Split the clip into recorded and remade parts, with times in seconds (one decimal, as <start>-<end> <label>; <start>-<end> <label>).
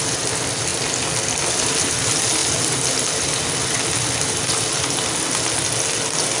0.0-6.4 recorded